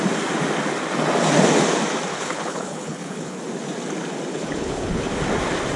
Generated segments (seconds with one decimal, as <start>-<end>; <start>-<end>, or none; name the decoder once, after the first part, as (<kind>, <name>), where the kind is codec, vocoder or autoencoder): 2.1-3.4 (codec, HILCodec); 4.3-5.1